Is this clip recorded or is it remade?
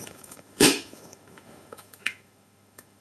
remade